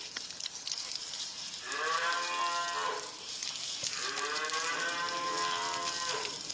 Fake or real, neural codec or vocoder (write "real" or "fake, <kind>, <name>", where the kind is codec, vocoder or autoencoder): fake, vocoder, BigVGAN v2